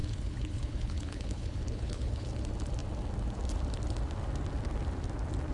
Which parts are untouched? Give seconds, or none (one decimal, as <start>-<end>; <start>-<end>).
2.3-5.5